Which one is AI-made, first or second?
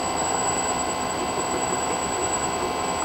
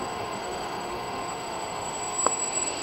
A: second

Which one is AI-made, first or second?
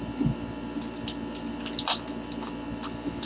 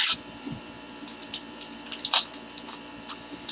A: second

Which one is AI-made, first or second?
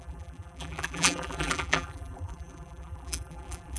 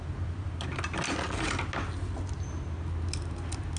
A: first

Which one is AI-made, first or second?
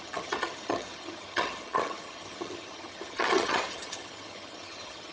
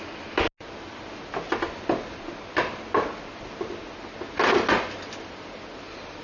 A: first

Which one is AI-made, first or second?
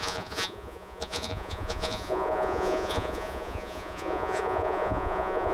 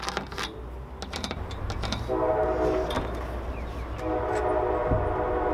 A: first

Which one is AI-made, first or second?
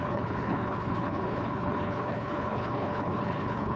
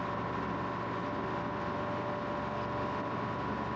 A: first